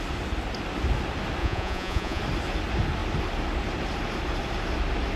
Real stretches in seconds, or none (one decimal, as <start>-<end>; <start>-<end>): 0.0-1.4; 2.2-5.2